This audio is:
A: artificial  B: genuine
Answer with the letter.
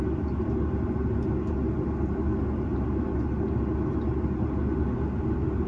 B